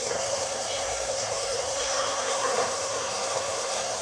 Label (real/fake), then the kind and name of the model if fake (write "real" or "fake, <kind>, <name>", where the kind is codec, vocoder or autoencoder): fake, codec, SNAC